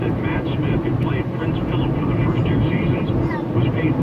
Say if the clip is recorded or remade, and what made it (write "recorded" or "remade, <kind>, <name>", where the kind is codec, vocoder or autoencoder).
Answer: recorded